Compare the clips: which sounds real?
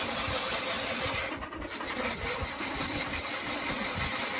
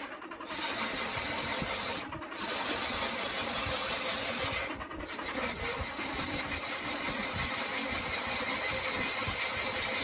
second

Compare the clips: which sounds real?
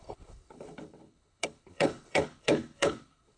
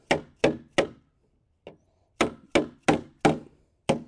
second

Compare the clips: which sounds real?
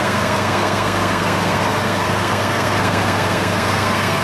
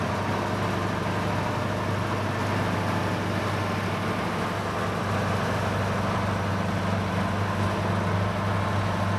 second